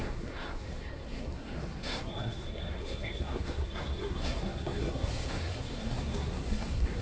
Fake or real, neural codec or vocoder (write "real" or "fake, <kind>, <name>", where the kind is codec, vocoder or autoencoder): fake, codec, SNAC